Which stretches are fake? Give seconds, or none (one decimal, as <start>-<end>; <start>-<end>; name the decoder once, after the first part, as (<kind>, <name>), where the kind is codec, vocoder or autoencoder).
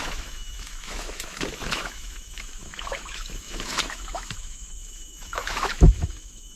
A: 0.0-6.6 (autoencoder, DAC-VAE)